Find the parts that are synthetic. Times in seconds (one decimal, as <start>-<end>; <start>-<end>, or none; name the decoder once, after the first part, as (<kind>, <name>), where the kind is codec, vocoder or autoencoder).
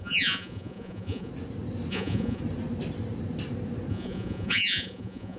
0.0-1.3 (vocoder, Vocos); 1.9-2.4; 3.9-5.4